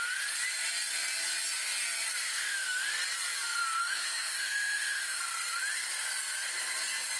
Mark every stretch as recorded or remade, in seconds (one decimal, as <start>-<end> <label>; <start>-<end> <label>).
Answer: 0.0-2.2 recorded; 2.2-2.9 remade; 2.9-3.8 recorded; 3.8-5.2 remade; 5.2-7.2 recorded